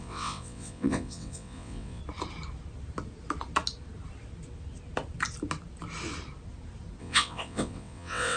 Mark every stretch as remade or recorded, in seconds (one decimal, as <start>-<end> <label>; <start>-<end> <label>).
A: 0.0-2.0 remade; 2.0-7.0 recorded; 7.0-8.4 remade